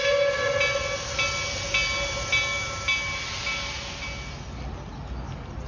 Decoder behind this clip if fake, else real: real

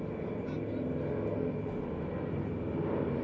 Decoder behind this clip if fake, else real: real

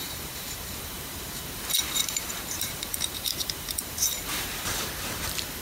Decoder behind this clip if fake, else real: fake, vocoder, BigVGAN v2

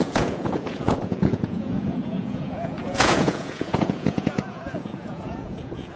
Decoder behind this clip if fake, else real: fake, vocoder, Vocos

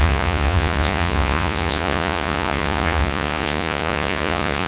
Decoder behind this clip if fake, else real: fake, vocoder, Vocos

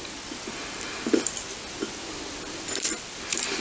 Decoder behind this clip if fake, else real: real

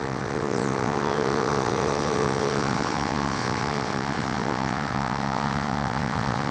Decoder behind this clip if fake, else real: fake, vocoder, WaveNeXt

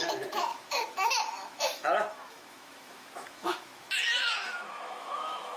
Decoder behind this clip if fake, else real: fake, autoencoder, DAC-VAE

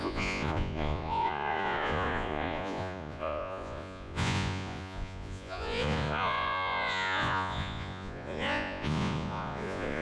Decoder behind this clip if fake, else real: fake, vocoder, Vocos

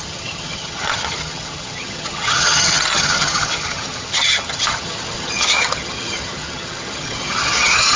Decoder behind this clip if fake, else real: fake, vocoder, HiFi-GAN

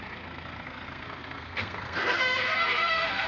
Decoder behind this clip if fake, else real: fake, codec, SNAC